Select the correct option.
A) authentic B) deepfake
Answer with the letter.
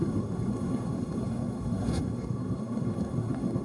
B